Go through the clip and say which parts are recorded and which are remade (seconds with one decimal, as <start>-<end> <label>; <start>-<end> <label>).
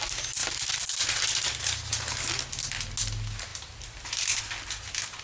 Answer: 0.0-5.2 recorded